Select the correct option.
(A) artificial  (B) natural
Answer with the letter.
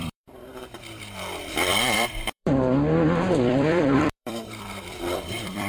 A